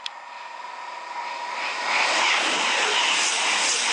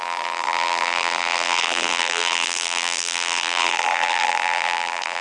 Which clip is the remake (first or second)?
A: second